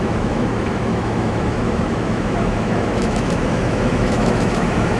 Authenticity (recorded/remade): remade